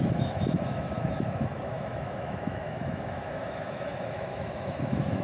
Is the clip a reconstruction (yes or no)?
yes